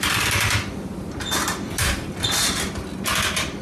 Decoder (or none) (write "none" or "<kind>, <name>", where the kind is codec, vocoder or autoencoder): none